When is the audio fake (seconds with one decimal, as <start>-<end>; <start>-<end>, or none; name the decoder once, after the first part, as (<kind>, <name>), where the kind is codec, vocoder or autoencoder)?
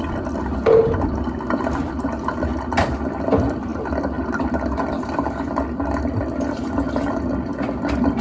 none